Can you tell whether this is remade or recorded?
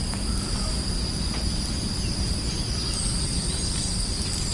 recorded